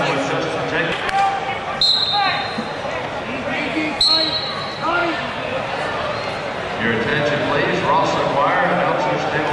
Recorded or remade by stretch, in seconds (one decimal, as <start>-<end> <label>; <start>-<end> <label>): 0.0-9.5 recorded